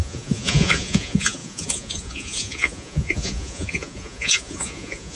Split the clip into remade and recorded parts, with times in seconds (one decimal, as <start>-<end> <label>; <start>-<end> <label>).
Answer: 0.0-5.2 remade